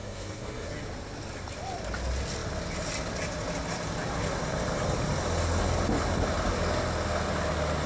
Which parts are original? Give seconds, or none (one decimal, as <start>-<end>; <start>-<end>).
0.7-7.9